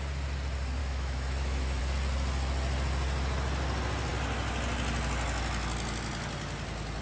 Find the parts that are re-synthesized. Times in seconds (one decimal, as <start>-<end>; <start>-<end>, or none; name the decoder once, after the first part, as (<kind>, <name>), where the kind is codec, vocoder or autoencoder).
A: 0.8-1.8 (autoencoder, DAC-VAE)